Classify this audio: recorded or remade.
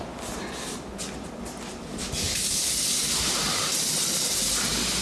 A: recorded